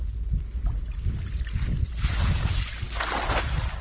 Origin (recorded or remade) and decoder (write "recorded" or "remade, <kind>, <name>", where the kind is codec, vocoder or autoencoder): recorded